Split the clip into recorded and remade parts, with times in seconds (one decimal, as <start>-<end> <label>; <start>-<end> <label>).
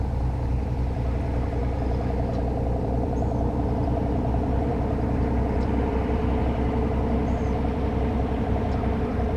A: 0.0-1.6 remade; 1.6-2.8 recorded; 2.8-9.4 remade